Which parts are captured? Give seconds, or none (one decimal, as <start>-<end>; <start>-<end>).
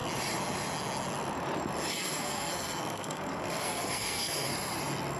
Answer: 0.0-1.9; 4.5-5.2